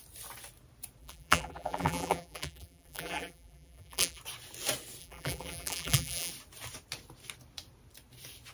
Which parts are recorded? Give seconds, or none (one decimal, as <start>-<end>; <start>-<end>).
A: 0.0-1.0; 4.2-5.0; 6.3-8.5